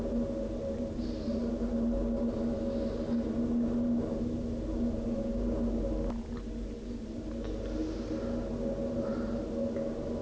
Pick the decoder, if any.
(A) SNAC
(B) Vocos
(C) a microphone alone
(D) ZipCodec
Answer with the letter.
C